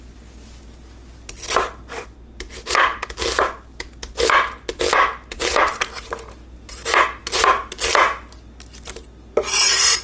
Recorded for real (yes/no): yes